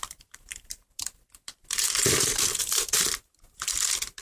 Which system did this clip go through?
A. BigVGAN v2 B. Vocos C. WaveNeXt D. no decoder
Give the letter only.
A